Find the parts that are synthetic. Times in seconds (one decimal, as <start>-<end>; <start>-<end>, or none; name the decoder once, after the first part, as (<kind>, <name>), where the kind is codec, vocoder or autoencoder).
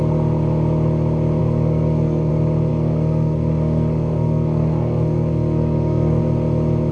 1.4-2.3 (codec, SNAC); 2.7-6.2